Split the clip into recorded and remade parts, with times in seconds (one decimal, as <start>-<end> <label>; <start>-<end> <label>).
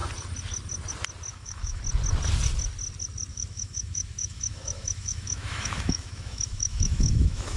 0.0-1.3 recorded; 1.3-1.8 remade; 1.8-3.3 recorded; 3.3-7.6 remade